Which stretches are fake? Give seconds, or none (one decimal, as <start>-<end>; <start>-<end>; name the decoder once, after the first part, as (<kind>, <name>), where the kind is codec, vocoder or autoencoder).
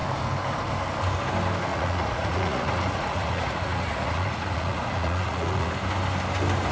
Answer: 1.7-5.7 (vocoder, Vocos)